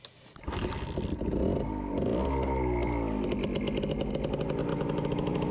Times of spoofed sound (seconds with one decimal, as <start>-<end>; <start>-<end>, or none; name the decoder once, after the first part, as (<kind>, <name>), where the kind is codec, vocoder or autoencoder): 4.7-5.5 (autoencoder, DAC-VAE)